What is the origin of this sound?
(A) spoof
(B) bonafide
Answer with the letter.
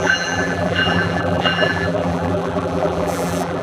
A